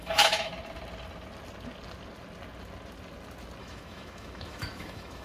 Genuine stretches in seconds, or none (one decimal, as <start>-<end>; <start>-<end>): 0.5-3.6

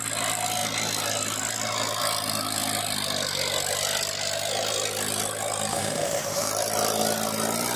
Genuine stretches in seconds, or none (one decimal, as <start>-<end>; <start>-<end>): 0.0-5.7; 6.5-7.8

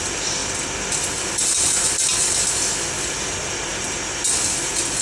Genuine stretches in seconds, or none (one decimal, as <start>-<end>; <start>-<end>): 0.0-5.0

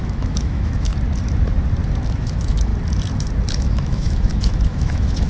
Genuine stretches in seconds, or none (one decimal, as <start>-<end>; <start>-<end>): 0.9-2.1; 2.7-3.6

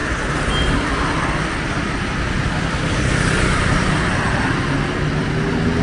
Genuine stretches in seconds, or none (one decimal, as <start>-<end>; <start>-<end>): 0.0-5.8

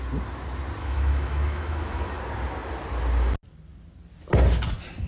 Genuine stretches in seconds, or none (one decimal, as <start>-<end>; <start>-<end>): 0.0-0.8; 2.2-5.1

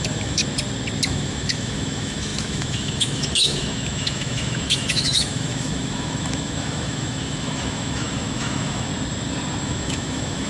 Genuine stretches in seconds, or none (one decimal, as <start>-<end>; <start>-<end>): 0.4-1.1; 8.9-9.6

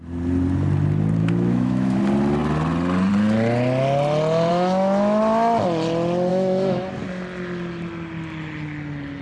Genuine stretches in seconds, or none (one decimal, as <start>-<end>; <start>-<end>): 0.0-1.2; 2.0-4.5; 5.2-6.3; 6.9-9.2